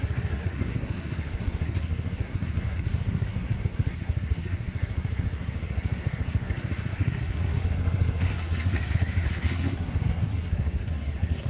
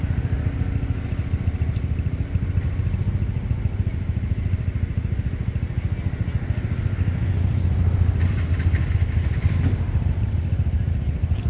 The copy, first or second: first